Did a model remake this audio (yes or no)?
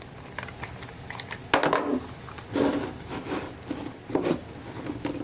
no